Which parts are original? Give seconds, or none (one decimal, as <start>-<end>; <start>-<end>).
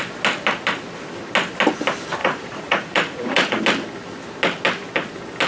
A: 0.0-2.2; 3.6-5.5